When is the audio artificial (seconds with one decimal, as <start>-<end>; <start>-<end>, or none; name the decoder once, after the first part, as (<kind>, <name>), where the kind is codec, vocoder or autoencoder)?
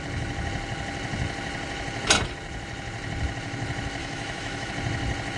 4.0-4.7 (autoencoder, DAC-VAE)